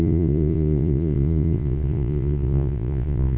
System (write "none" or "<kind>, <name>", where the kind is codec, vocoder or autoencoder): vocoder, Vocos